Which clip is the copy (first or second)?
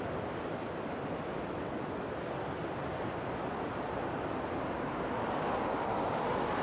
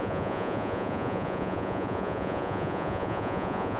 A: second